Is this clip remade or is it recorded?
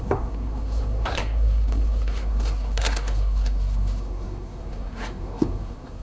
remade